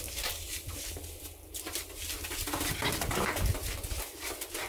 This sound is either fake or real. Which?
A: real